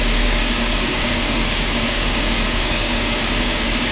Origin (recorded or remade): remade